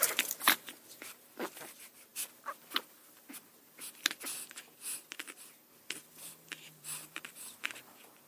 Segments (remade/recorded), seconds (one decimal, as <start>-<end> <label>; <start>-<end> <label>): 0.0-2.1 remade; 2.1-6.6 recorded; 6.6-8.3 remade